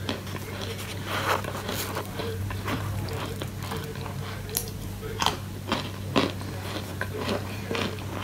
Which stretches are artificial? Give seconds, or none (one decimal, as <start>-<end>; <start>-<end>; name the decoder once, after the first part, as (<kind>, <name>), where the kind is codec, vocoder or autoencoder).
2.2-3.3 (vocoder, BigVGAN v2); 4.6-5.5; 6.9-7.6